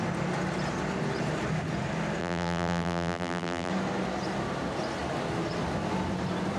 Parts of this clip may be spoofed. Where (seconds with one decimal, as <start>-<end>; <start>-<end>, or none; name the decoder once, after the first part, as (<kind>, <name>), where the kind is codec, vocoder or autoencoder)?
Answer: 2.2-3.7 (vocoder, BigVGAN v2)